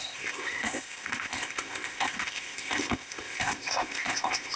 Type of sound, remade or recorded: remade